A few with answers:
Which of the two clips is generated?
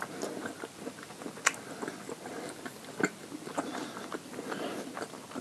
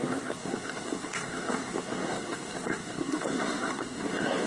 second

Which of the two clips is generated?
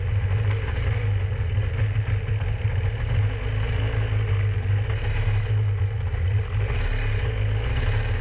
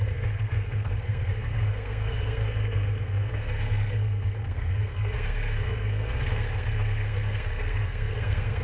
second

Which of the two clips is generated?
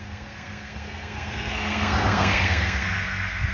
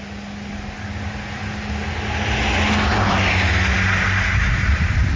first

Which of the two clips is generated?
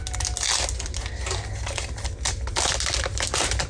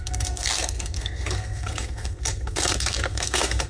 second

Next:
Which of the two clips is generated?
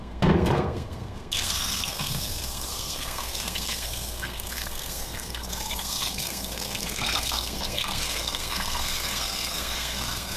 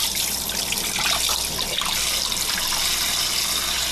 first